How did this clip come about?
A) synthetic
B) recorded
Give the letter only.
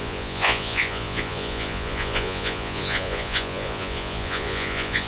A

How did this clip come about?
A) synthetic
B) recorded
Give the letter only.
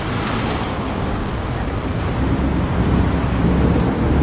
B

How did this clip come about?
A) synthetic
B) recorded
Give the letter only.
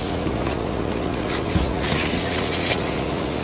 A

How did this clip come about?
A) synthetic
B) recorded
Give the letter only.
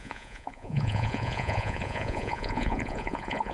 A